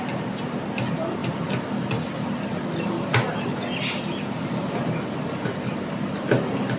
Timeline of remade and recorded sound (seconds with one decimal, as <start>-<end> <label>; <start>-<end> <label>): 0.0-6.8 recorded